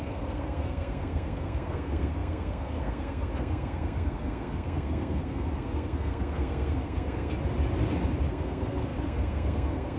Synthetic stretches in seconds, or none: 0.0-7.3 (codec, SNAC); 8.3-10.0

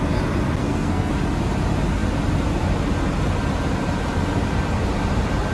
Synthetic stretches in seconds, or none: 0.6-1.1 (codec, SNAC)

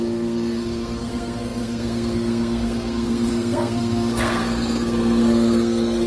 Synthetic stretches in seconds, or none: 0.0-6.1 (codec, SNAC)

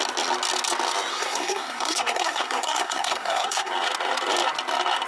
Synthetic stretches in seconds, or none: 1.1-3.7 (codec, SNAC)

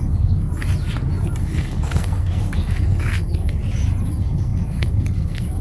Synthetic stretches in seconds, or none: 0.0-0.5 (codec, SNAC); 1.4-3.6; 4.1-5.6

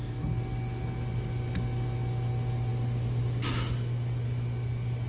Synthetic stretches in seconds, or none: none

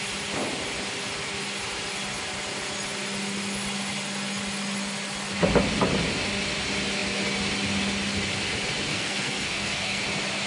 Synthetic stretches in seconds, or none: 8.9-10.0 (codec, SNAC)

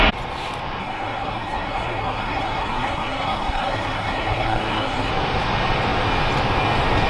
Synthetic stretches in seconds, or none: 0.8-5.1 (codec, SNAC)